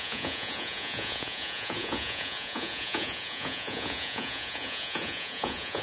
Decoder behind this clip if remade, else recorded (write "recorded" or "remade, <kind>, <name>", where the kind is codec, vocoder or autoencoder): remade, vocoder, Vocos